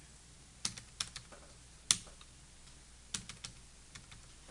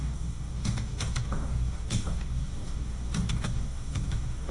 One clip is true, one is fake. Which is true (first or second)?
first